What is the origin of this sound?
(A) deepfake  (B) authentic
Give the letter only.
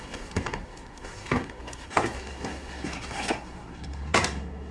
A